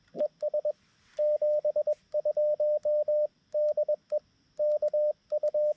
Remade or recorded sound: recorded